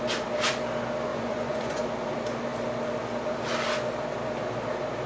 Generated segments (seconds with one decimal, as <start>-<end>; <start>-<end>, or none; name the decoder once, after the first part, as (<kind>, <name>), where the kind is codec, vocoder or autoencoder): 1.1-1.8 (vocoder, Vocos)